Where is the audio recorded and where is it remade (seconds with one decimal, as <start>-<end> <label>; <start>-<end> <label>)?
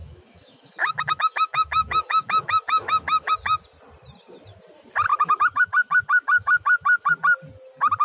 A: 0.0-3.3 remade; 3.3-5.1 recorded; 5.1-7.1 remade; 7.1-8.0 recorded